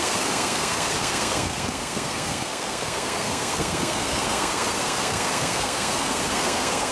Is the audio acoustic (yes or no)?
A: no